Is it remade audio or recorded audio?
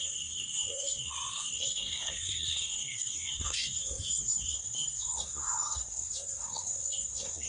remade